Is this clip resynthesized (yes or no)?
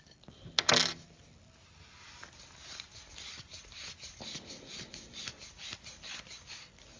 no